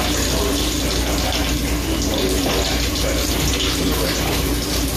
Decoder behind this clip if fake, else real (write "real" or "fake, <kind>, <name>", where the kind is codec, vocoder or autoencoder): real